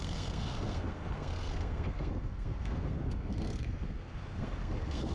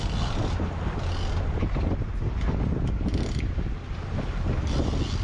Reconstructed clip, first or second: first